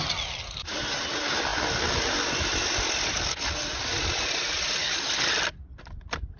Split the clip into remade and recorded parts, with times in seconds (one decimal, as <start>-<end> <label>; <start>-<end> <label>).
0.0-6.4 recorded